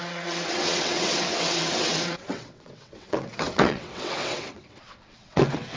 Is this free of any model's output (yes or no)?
no